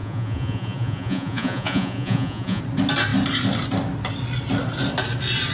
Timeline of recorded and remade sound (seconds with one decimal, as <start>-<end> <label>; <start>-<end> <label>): 0.0-2.6 remade; 2.6-5.5 recorded